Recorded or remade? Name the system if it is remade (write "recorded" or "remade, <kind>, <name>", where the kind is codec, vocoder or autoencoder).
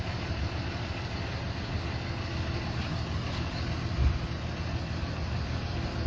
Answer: recorded